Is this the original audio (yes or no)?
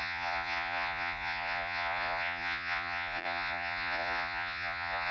no